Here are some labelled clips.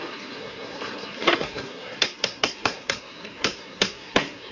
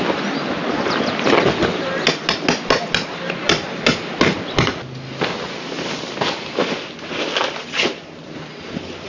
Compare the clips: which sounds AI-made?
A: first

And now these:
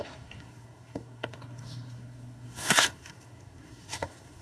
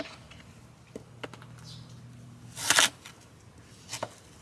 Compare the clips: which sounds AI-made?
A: first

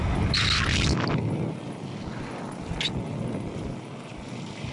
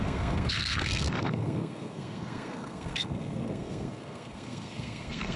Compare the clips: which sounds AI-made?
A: second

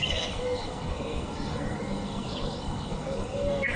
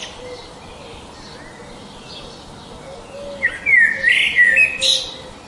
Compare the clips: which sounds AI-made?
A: first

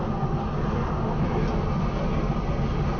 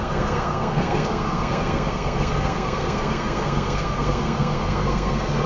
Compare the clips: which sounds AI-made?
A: second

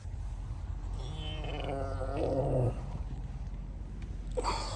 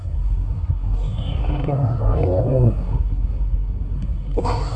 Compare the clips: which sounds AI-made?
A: second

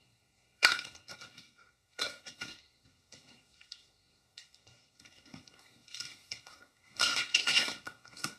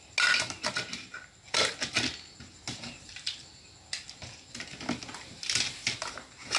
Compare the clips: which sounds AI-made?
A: first